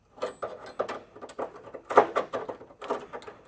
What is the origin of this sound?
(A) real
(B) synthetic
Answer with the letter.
A